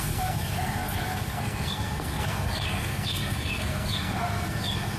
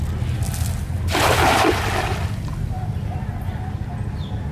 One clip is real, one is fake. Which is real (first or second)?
second